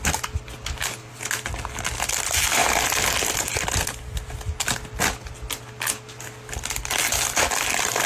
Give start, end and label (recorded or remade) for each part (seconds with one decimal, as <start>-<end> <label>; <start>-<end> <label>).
0.0-8.1 recorded